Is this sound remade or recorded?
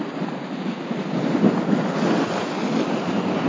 recorded